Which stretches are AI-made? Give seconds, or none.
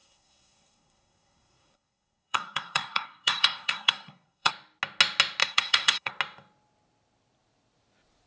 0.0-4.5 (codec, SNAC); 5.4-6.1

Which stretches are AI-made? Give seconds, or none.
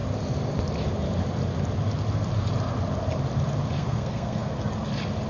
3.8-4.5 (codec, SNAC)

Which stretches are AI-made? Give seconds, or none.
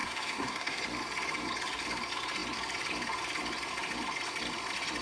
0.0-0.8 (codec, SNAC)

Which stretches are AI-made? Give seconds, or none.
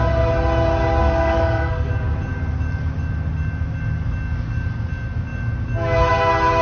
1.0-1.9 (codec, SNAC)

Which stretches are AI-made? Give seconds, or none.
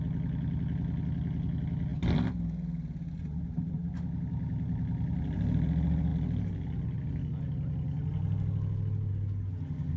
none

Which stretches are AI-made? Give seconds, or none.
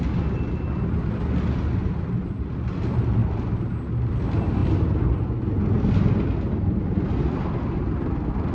none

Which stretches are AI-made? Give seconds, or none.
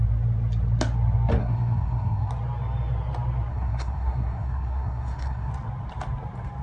1.4-2.3 (codec, SNAC); 3.5-5.5